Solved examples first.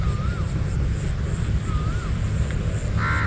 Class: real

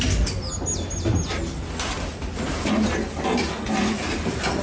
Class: real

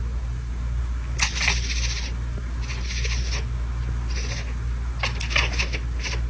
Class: real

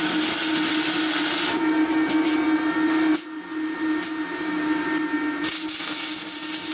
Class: real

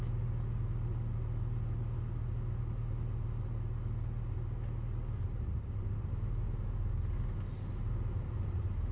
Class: real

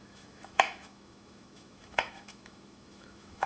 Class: fake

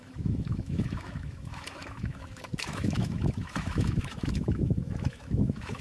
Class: fake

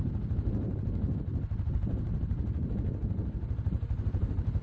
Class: real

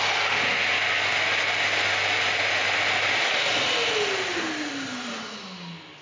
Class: real